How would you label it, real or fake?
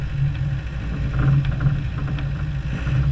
real